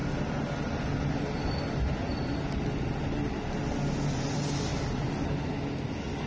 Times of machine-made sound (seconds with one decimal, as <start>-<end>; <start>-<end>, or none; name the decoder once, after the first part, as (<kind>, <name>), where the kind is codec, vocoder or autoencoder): none

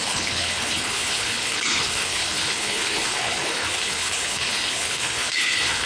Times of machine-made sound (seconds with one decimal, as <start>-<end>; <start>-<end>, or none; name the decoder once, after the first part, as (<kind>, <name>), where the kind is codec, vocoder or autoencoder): 0.0-5.9 (codec, HILCodec)

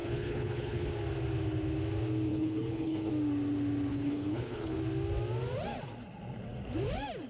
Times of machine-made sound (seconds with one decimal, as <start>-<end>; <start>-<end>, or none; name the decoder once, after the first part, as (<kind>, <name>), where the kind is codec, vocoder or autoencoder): 0.0-0.9 (codec, HILCodec); 2.3-3.1; 3.9-4.8

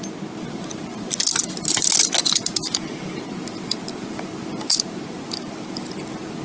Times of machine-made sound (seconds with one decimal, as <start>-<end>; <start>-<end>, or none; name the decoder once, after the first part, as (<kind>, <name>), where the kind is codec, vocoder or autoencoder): none

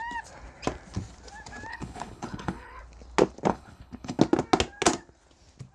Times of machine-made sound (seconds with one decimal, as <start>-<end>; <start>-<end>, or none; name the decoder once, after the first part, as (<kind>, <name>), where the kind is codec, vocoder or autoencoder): 1.7-2.8 (codec, HILCodec); 3.5-4.2